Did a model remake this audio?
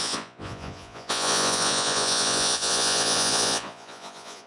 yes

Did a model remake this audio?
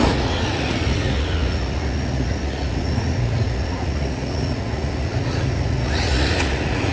yes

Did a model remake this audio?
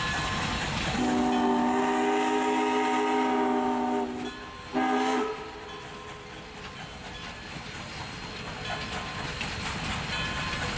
no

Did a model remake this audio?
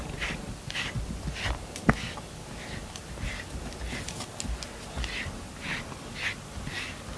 no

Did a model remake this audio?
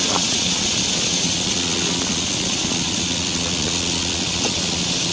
yes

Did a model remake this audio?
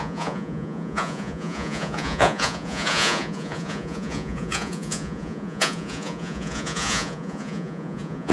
yes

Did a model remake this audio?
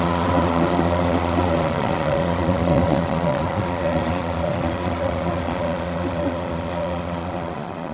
yes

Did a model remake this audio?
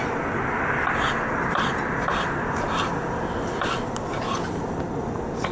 no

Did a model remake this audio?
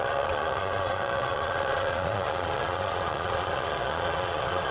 yes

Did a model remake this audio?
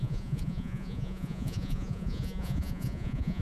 yes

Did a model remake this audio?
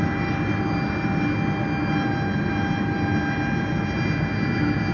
no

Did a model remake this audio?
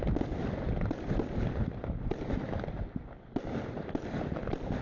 no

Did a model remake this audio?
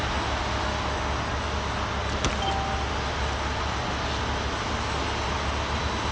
no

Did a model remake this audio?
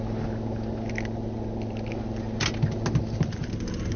no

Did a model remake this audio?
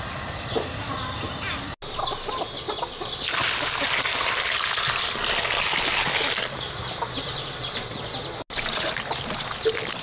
no